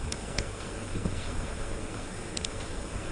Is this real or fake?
fake